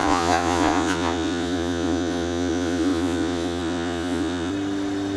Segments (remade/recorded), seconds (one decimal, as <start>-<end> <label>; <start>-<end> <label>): 0.0-4.5 remade; 4.5-5.2 recorded